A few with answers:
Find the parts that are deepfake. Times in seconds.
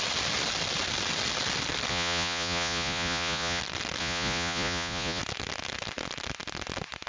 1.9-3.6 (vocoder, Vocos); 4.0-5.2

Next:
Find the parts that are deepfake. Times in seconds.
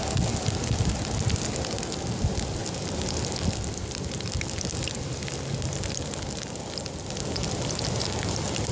2.6-6.8 (vocoder, BigVGAN v2)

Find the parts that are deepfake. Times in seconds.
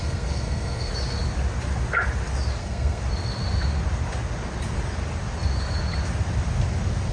0.0-0.9 (codec, SNAC); 2.6-3.0